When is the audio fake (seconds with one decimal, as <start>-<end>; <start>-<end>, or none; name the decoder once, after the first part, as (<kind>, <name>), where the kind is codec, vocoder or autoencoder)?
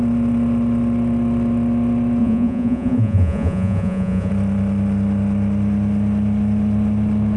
2.2-4.3 (vocoder, Vocos)